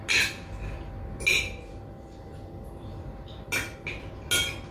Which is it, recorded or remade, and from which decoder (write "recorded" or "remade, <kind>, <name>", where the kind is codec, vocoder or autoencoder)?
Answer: recorded